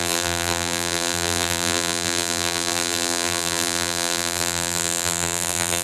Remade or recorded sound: remade